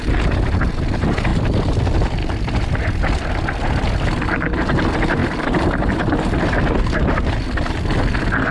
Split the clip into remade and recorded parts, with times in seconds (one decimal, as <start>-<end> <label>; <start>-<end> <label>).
0.0-1.3 recorded; 1.3-1.8 remade; 1.8-2.2 recorded; 2.2-3.3 remade; 3.3-5.2 recorded; 5.2-7.6 remade; 7.6-8.5 recorded